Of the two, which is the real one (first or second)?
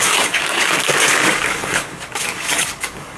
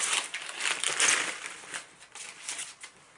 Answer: second